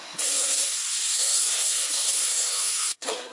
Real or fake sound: fake